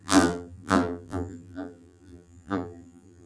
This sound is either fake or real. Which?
fake